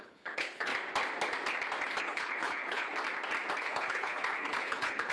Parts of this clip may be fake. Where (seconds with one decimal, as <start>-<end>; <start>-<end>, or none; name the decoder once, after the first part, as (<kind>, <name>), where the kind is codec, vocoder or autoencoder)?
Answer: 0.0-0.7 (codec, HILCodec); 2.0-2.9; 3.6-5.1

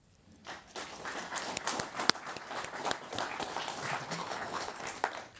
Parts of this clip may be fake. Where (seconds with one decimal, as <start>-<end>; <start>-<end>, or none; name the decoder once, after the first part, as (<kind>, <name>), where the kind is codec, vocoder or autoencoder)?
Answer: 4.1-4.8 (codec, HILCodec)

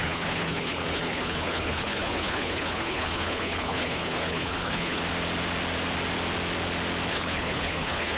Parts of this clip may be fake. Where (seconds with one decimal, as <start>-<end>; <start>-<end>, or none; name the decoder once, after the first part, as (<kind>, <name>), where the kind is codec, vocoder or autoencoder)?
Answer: 0.0-5.0 (codec, HILCodec); 7.1-8.2

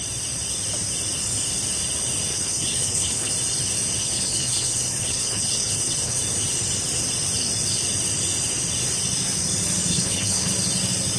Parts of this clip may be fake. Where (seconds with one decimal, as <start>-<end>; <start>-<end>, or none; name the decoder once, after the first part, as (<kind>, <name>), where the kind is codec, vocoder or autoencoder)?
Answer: 2.3-3.3 (codec, HILCodec); 4.0-6.2; 9.9-10.5

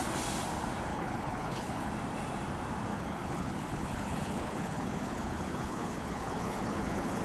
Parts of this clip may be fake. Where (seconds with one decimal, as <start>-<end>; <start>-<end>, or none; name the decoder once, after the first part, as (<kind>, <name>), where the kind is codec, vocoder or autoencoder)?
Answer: 0.9-1.9 (codec, HILCodec); 2.9-7.2

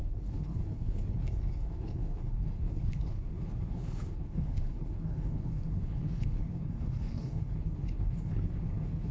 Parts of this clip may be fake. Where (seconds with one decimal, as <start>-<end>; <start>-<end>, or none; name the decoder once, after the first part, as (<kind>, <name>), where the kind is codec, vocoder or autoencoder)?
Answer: 0.0-9.1 (codec, HILCodec)